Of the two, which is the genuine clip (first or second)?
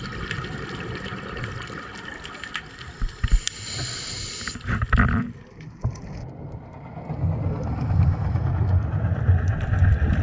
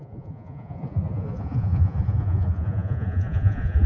first